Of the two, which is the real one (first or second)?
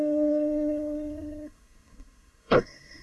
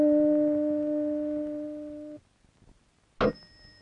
second